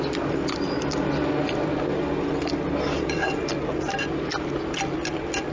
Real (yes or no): yes